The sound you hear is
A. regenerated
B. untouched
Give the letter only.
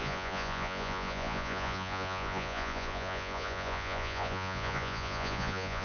A